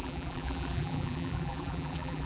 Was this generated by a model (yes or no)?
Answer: yes